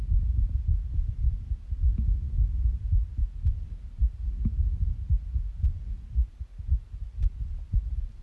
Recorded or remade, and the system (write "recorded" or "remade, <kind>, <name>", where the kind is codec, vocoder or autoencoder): recorded